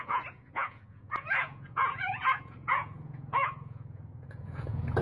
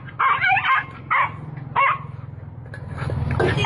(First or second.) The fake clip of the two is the first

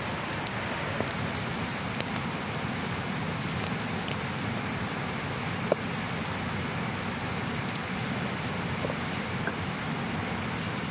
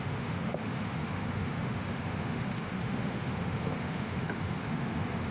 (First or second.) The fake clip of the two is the second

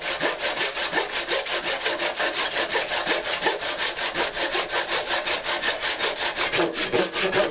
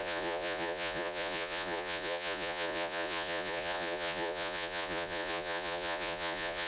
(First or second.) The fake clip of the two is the second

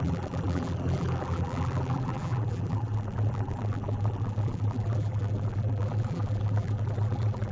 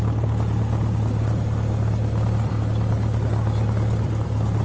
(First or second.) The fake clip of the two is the first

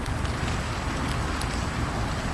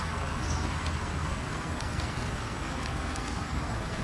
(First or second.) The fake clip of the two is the second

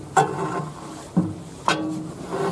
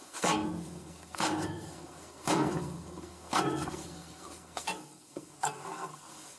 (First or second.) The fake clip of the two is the second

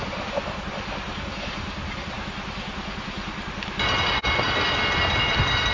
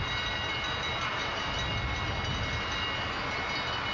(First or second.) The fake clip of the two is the first